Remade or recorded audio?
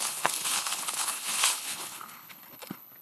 remade